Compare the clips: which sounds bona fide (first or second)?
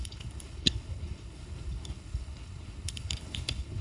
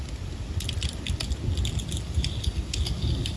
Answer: second